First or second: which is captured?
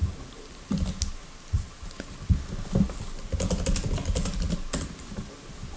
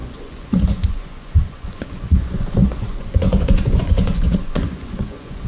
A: first